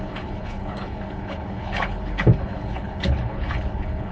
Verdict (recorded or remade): remade